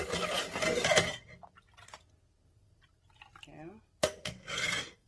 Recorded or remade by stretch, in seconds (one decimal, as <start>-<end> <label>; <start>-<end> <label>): 0.0-4.0 recorded; 4.0-5.1 remade